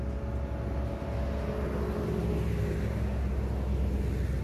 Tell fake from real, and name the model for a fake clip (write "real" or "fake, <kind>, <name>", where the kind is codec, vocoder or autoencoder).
real